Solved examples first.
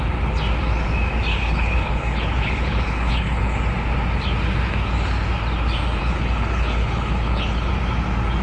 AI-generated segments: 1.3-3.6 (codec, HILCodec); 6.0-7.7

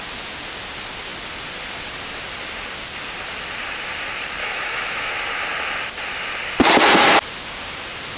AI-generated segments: 4.4-5.1 (autoencoder, DAC-VAE)

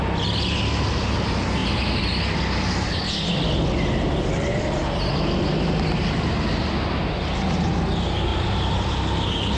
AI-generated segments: 1.6-2.1 (vocoder, BigVGAN v2); 8.3-9.6

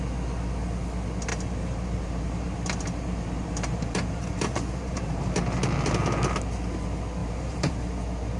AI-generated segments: 1.3-5.4 (vocoder, BigVGAN v2); 7.2-7.9

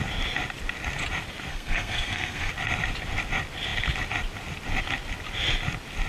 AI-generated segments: 1.5-2.5 (codec, SNAC)

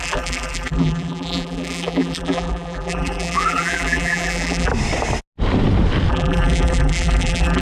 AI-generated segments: 0.0-4.7 (vocoder, BigVGAN v2); 6.1-7.6

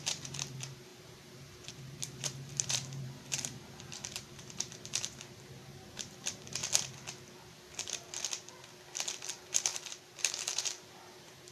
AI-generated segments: 0.0-6.6 (vocoder, BigVGAN v2); 9.0-11.5

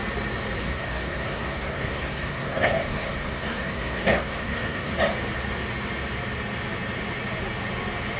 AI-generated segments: 0.6-4.9 (codec, SNAC)